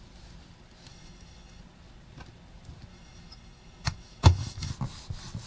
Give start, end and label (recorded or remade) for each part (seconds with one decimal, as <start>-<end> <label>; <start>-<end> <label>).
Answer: 0.0-0.9 recorded; 0.9-1.6 remade; 1.6-2.9 recorded; 2.9-4.7 remade; 4.7-5.5 recorded